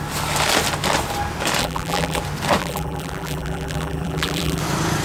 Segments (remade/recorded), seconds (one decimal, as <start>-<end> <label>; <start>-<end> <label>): 0.0-1.6 recorded; 1.6-2.2 remade; 2.2-2.6 recorded; 2.6-4.6 remade; 4.6-5.0 recorded